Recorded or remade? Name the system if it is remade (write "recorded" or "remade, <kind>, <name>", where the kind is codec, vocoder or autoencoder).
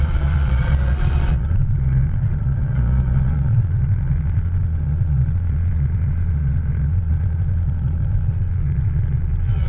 remade, vocoder, Vocos